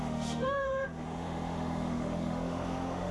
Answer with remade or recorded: remade